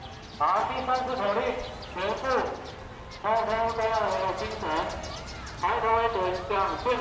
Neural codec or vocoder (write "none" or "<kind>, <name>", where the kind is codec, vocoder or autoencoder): none